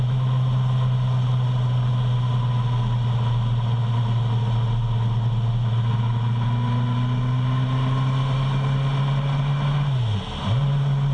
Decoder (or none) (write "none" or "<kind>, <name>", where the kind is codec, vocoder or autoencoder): none